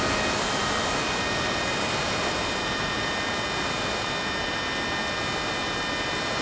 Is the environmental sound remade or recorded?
recorded